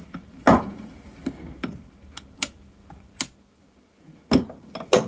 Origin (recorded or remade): recorded